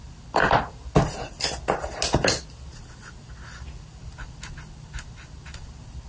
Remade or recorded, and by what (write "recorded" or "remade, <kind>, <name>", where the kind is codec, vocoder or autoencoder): recorded